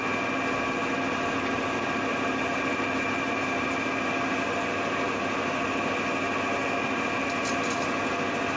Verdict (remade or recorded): recorded